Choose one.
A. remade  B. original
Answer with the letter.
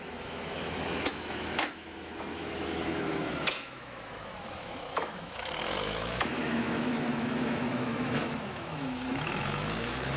A